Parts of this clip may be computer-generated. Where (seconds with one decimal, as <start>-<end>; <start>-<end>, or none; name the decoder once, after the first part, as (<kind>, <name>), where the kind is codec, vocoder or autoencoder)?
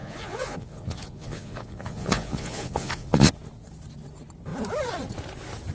0.0-3.3 (vocoder, Vocos)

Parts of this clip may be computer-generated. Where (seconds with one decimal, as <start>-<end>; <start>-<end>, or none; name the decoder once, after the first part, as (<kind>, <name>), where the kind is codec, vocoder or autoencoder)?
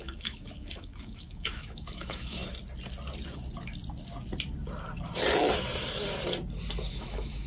0.0-2.4 (autoencoder, DAC-VAE); 6.9-7.5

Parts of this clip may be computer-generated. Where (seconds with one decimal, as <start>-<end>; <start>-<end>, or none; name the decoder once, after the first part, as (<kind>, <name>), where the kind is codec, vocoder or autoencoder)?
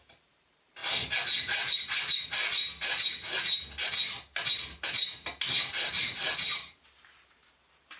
0.0-0.8 (vocoder, BigVGAN v2); 5.6-8.0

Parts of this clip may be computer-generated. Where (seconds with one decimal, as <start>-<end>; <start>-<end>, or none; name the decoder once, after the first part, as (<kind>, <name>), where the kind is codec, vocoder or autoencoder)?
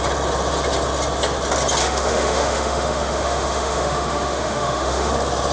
1.8-5.1 (autoencoder, DAC-VAE)